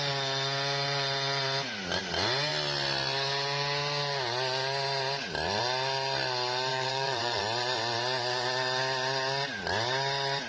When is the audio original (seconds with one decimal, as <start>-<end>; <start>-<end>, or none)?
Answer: 0.0-6.7; 7.4-10.5

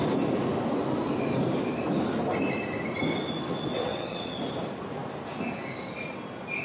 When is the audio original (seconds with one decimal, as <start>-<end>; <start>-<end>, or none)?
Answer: 0.0-3.7; 4.4-6.6

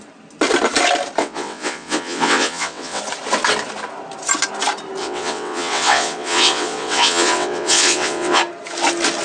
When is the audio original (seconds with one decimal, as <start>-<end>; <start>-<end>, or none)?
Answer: 0.0-1.2; 3.0-5.0; 8.4-9.2